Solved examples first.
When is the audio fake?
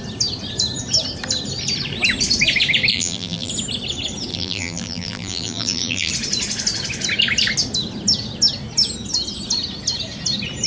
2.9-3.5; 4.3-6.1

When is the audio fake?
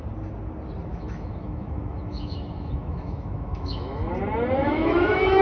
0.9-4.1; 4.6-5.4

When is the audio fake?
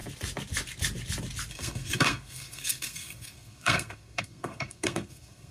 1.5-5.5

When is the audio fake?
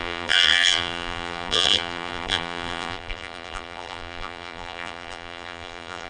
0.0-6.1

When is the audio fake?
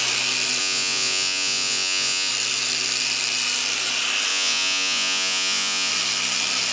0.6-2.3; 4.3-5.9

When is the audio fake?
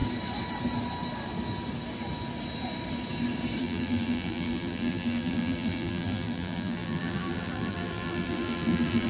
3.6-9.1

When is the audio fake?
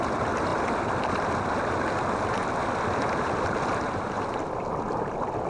none